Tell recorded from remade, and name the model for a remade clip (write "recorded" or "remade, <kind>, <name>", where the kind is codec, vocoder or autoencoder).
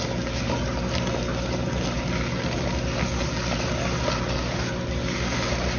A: recorded